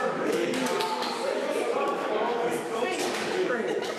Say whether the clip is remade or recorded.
remade